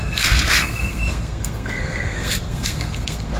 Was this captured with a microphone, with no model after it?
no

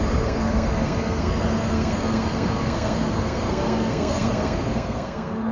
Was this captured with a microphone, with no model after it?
no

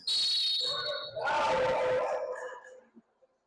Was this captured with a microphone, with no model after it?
yes